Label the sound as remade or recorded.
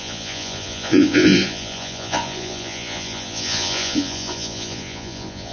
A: remade